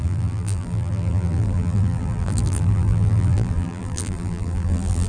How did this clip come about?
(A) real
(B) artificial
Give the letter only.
B